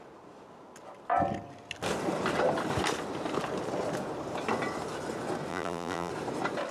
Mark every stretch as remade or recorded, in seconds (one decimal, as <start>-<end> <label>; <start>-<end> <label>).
0.0-5.5 recorded; 5.5-6.1 remade; 6.1-6.7 recorded